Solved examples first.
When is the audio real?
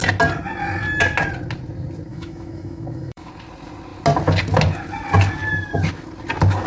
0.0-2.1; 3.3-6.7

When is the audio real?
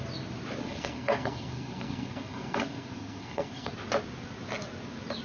0.0-0.6; 3.7-5.2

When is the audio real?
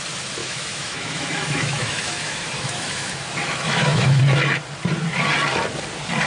0.0-0.4; 4.2-6.3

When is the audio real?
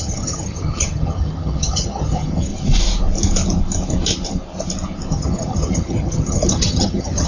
2.5-5.1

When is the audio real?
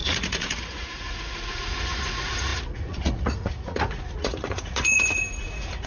none